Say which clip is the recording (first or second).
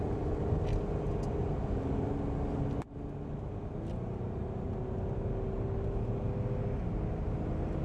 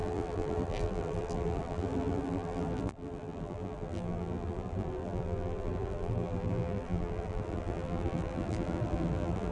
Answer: first